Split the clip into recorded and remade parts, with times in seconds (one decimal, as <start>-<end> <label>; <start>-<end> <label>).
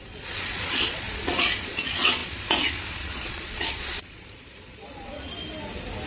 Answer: 0.0-5.3 remade; 5.3-6.1 recorded